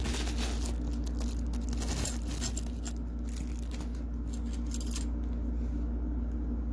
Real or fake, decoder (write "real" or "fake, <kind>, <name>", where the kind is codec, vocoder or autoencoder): real